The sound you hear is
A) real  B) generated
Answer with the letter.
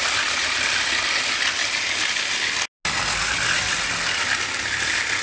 A